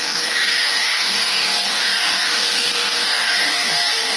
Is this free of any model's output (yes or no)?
no